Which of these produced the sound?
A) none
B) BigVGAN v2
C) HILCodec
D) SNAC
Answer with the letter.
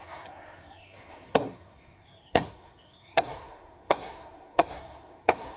D